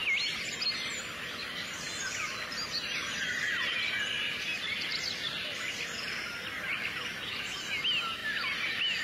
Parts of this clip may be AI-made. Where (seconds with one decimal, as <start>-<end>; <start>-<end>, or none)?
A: none